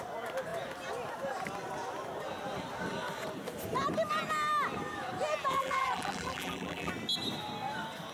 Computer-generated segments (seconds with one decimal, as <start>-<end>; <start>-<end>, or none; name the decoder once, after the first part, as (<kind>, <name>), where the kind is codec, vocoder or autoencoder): 5.5-6.9 (vocoder, BigVGAN v2)